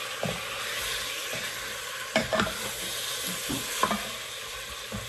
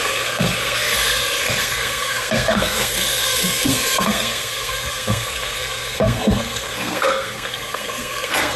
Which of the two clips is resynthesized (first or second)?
second